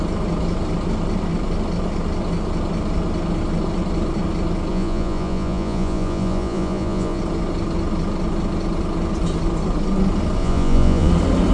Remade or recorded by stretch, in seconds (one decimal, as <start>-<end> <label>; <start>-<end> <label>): 0.0-4.7 recorded; 4.7-7.2 remade; 7.2-10.4 recorded; 10.4-11.1 remade; 11.1-11.5 recorded